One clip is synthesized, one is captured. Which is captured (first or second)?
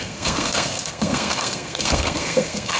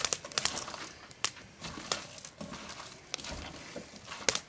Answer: second